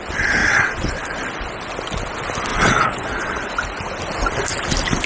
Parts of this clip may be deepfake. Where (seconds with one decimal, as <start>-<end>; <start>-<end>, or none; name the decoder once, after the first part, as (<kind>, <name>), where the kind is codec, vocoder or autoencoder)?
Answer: 0.4-1.0 (vocoder, WaveNeXt); 2.5-3.5